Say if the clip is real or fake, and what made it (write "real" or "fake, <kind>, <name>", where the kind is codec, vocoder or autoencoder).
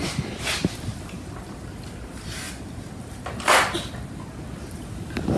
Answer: real